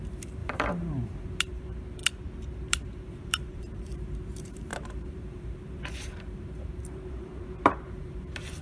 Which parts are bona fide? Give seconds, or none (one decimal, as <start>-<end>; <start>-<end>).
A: 2.0-2.5